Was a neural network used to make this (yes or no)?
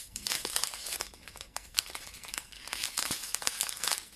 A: yes